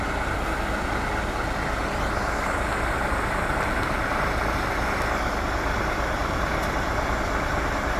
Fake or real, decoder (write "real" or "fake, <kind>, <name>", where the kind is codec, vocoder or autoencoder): real